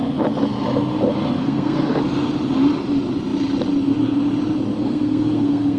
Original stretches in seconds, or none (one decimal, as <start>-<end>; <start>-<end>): 0.0-1.4; 2.0-4.8